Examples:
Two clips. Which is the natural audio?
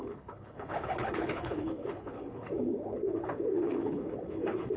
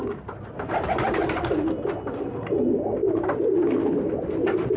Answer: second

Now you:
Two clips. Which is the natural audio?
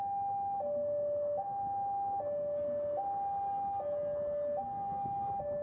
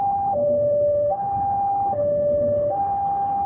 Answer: first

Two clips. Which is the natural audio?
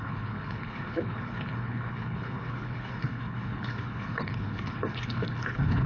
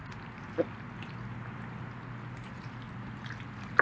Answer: second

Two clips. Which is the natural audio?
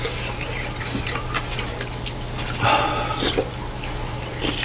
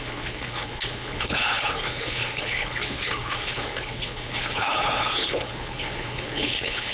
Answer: first